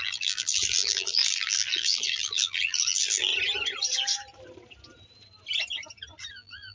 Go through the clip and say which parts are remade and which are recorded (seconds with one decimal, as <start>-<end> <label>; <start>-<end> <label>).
0.0-3.3 remade; 3.3-6.3 recorded; 6.3-6.7 remade